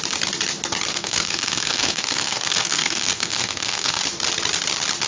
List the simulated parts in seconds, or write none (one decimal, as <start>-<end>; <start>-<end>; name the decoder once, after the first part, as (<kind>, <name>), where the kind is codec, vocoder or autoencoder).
0.9-4.0 (codec, SNAC)